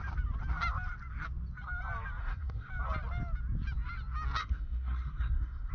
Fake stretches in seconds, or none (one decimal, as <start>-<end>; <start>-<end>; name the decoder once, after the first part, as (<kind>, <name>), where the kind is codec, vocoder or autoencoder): 2.2-2.7 (codec, SNAC); 4.4-5.7